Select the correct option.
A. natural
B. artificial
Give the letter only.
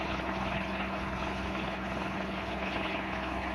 B